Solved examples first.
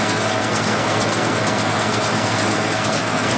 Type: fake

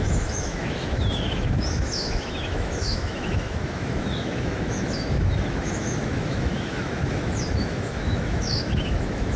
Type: fake